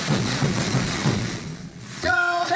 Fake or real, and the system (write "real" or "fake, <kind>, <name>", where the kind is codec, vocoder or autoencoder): fake, vocoder, Vocos